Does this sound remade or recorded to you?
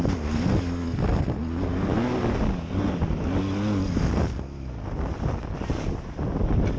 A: recorded